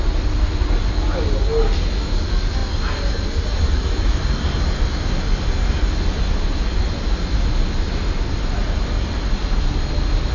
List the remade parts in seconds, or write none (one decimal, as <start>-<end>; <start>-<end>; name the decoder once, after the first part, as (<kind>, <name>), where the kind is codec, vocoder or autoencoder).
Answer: none